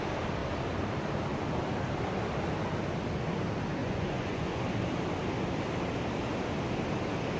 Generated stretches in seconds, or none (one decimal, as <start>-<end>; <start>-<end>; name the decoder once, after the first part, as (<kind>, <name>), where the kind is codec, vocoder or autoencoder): 3.8-4.6 (vocoder, Vocos)

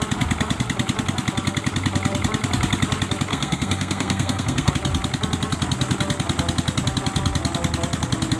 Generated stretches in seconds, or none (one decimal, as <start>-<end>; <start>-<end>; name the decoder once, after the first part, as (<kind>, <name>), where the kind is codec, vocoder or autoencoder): 3.3-4.7 (codec, SNAC)